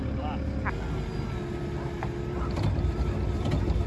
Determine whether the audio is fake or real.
real